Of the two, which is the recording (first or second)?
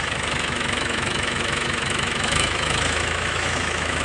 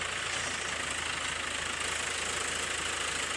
second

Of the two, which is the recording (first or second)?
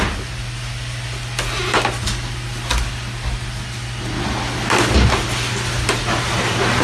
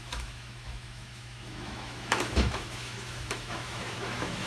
first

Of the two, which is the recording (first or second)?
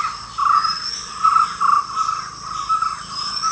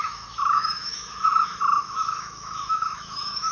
first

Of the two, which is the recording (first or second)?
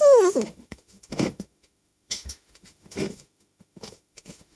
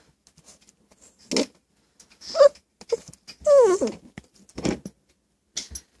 second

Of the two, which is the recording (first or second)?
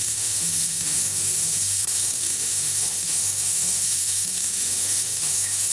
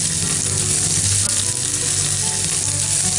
second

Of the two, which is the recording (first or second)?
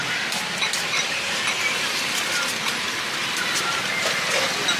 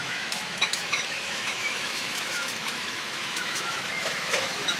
first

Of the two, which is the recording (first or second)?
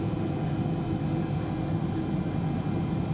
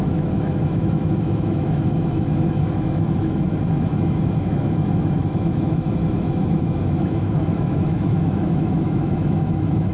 first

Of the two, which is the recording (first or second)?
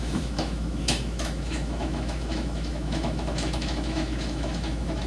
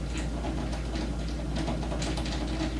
second